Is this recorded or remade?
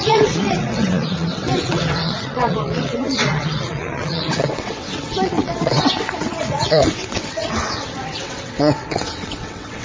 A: remade